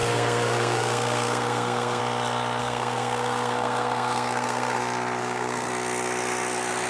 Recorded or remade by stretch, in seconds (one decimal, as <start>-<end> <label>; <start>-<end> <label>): 0.0-2.0 remade; 2.0-2.6 recorded; 2.6-4.8 remade; 4.8-5.2 recorded; 5.2-5.7 remade; 5.7-6.9 recorded